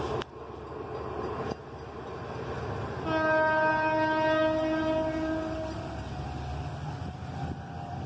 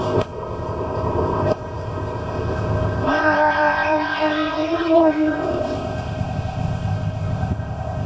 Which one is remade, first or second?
second